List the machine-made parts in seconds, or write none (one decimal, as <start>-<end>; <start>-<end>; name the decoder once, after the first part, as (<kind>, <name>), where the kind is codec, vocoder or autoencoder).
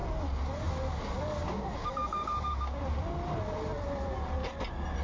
1.4-2.8 (codec, DAC)